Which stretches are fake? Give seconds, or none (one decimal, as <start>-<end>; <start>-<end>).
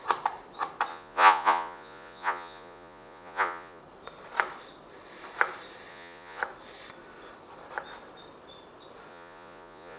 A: 0.9-3.8; 5.9-6.4; 9.1-10.0